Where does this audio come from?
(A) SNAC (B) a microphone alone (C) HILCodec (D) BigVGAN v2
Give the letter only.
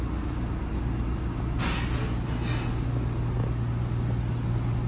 B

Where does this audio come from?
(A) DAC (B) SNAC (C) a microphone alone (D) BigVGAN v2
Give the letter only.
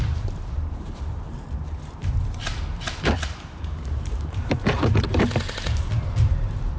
D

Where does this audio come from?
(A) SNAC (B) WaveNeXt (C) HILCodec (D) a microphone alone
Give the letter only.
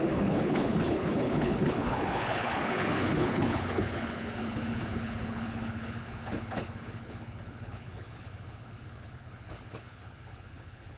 C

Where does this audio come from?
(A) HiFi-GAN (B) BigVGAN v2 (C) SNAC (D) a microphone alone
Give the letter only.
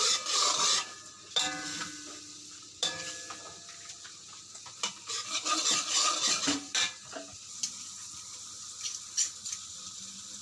B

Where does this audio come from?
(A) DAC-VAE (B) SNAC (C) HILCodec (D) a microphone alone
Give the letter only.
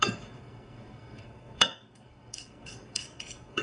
B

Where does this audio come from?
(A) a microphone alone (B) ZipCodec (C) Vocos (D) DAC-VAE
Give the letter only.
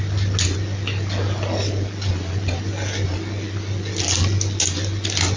A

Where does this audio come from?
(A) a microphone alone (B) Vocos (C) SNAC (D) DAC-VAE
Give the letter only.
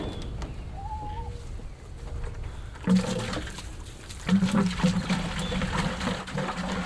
A